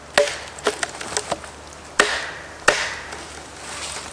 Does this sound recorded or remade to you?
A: recorded